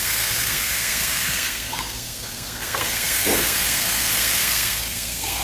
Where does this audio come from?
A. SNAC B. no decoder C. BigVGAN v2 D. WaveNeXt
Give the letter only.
A